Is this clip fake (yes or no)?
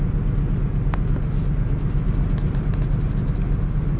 no